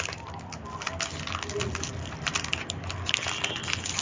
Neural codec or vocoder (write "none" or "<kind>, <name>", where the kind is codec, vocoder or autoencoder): none